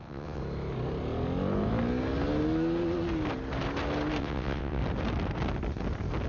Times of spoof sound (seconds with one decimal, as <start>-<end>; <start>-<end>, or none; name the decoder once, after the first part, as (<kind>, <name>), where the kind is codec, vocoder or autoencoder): 0.0-0.4 (vocoder, WaveNeXt); 4.2-4.8